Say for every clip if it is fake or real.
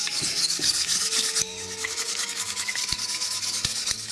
fake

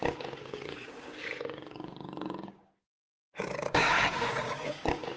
fake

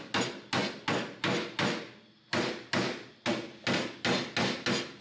real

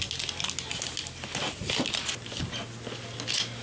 real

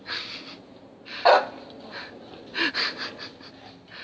real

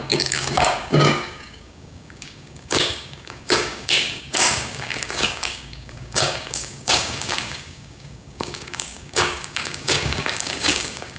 fake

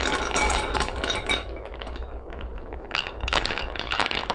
fake